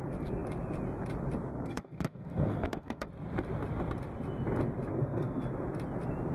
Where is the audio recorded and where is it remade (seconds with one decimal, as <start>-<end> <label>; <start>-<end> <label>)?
0.0-1.5 recorded; 1.5-3.1 remade; 3.1-4.9 recorded; 4.9-5.4 remade; 5.4-6.3 recorded